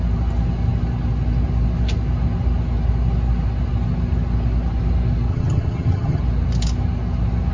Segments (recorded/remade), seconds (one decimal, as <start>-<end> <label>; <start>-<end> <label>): 0.0-5.3 recorded; 5.3-6.2 remade; 6.2-7.5 recorded